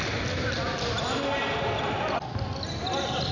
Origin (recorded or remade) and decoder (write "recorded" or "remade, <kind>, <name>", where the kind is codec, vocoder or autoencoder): recorded